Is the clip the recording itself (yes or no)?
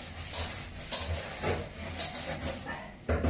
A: yes